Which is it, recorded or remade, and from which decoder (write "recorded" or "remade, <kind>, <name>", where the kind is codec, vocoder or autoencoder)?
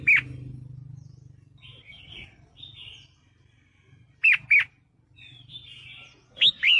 recorded